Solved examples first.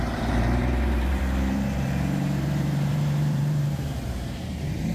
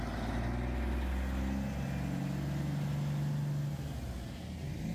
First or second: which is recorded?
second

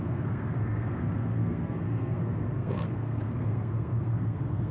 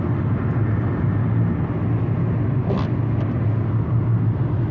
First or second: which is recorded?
second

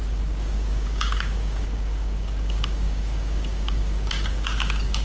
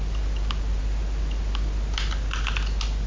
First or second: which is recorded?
second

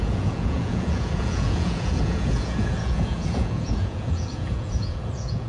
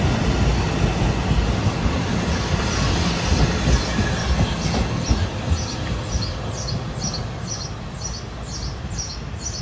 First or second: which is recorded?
second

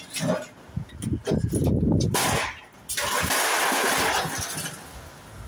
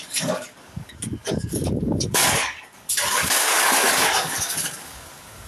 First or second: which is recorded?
first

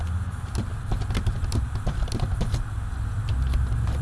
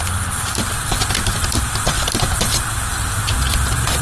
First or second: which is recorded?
first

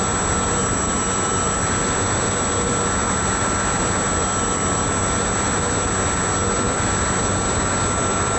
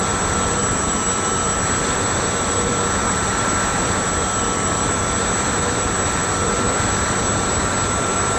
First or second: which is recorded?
first